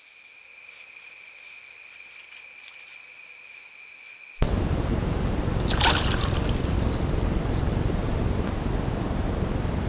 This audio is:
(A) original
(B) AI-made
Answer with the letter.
A